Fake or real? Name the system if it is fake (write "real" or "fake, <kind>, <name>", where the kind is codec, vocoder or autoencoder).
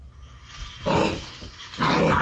real